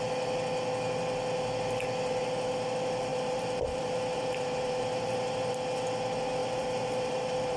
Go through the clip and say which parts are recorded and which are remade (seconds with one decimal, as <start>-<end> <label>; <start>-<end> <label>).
0.0-3.1 recorded; 3.1-5.5 remade; 5.5-6.4 recorded; 6.4-7.6 remade